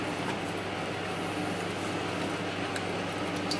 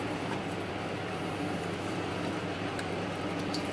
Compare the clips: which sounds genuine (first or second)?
first